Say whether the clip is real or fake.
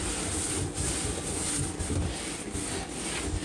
real